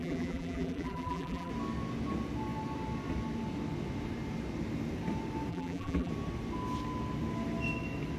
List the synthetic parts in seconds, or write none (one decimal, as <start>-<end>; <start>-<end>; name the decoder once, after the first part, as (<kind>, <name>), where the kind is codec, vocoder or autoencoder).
0.0-1.5 (vocoder, BigVGAN v2); 5.5-6.1